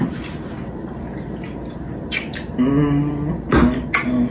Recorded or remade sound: recorded